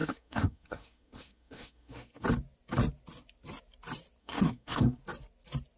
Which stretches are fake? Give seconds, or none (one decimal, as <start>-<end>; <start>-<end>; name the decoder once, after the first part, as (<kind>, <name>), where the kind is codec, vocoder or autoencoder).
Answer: 0.0-2.2 (codec, SNAC); 4.2-5.0